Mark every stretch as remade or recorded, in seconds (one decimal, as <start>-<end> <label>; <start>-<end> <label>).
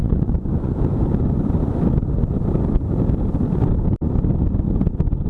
0.0-0.7 remade; 0.7-5.3 recorded